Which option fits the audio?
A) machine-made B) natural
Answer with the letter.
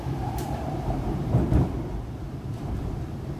A